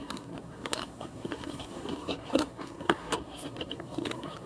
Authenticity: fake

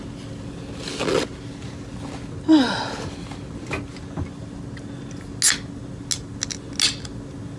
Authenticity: real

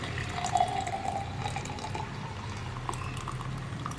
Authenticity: real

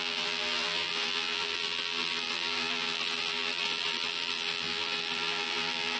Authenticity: fake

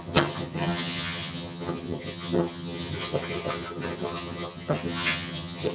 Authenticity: fake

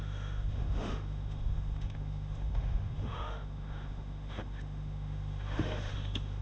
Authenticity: fake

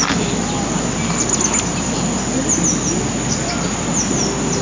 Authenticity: real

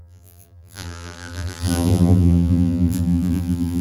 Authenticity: fake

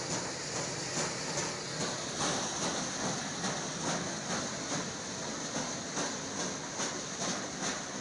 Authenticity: real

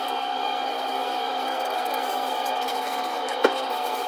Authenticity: fake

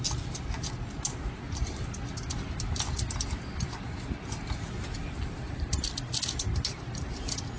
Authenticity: real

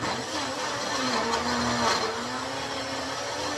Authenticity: real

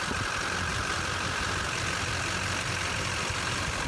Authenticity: real